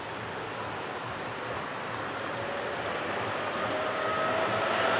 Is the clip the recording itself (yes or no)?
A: yes